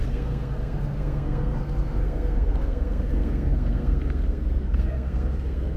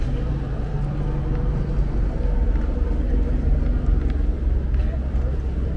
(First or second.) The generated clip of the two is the first